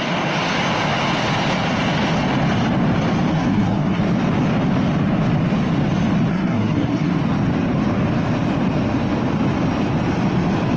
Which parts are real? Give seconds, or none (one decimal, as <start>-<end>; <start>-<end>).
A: 0.0-3.3; 4.0-6.3; 7.2-10.8